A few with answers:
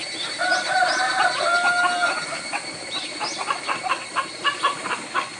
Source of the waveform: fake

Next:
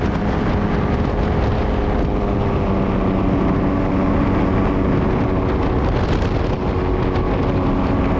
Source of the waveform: real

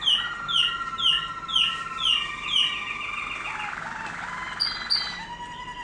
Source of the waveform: real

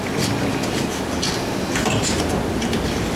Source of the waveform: real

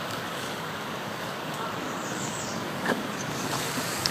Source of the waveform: fake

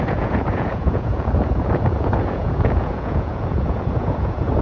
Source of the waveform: fake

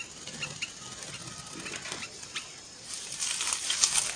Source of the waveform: real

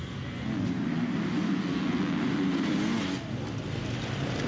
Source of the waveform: real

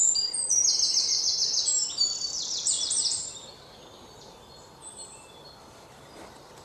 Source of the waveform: fake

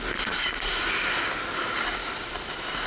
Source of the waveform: real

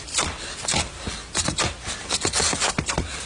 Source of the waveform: real